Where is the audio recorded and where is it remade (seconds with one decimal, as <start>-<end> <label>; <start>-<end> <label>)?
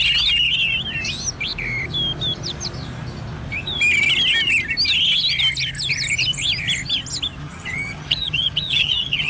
0.0-7.4 recorded; 7.4-9.3 remade